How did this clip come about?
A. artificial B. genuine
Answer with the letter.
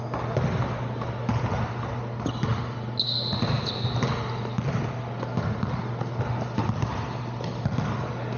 B